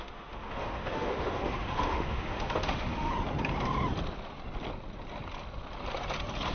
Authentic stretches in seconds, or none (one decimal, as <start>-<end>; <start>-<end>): 3.1-6.5